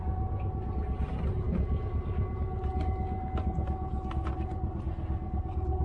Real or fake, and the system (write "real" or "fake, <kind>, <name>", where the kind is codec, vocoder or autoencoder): real